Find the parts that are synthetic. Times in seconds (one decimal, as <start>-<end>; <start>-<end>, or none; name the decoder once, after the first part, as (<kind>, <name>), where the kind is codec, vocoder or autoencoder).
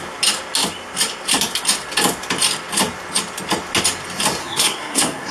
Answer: 4.4-5.3 (codec, SNAC)